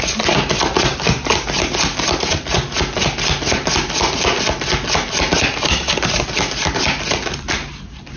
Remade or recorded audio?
recorded